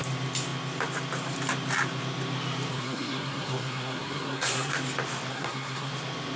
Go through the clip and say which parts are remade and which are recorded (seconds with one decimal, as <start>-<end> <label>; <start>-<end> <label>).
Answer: 0.0-2.7 recorded; 2.7-4.7 remade; 4.7-5.3 recorded; 5.3-5.9 remade; 5.9-6.4 recorded